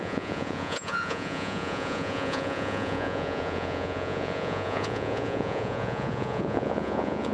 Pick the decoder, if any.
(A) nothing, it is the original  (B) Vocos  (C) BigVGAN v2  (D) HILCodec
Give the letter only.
B